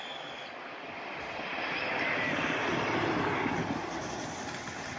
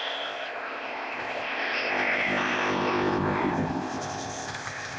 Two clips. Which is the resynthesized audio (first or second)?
second